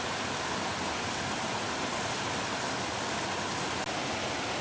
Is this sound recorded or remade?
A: recorded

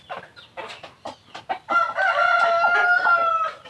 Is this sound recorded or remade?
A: recorded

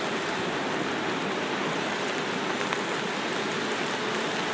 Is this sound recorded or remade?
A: recorded